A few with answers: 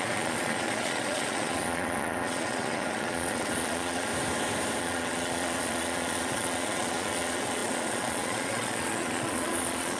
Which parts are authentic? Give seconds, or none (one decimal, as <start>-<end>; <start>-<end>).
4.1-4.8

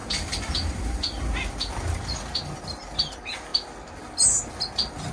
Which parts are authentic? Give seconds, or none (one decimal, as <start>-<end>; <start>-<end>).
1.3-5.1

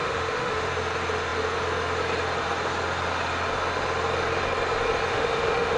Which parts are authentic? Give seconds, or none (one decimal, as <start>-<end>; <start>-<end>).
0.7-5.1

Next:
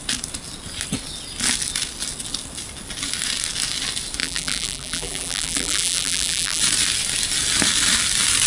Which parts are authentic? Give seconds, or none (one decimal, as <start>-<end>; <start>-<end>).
0.0-4.2; 6.6-8.5